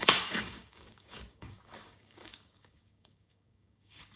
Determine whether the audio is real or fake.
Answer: fake